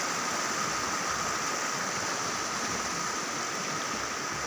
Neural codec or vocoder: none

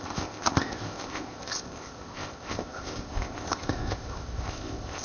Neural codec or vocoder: codec, ZipCodec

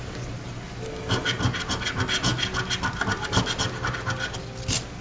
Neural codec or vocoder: none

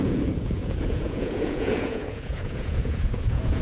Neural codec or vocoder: vocoder, Vocos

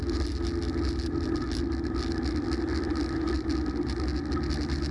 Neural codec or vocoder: none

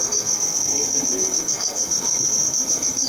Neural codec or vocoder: codec, SNAC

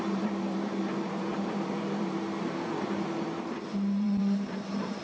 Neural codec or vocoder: vocoder, BigVGAN v2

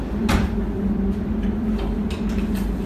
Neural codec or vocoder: vocoder, BigVGAN v2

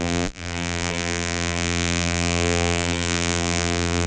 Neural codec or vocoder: vocoder, BigVGAN v2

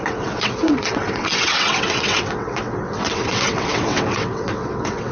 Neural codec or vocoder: vocoder, WaveNeXt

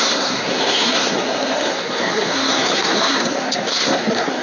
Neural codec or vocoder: codec, SNAC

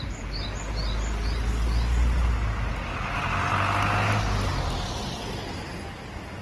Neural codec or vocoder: none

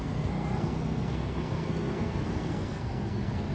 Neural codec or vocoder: codec, SNAC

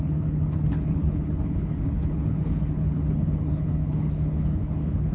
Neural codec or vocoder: codec, HILCodec